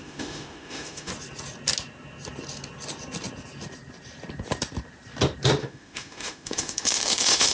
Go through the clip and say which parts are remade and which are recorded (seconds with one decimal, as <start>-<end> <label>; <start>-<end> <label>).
0.0-1.1 remade; 1.1-5.6 recorded; 5.6-7.5 remade